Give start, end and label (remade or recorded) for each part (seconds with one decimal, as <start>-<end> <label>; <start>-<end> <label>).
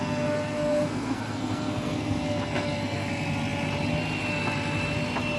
0.0-3.1 remade; 3.1-5.4 recorded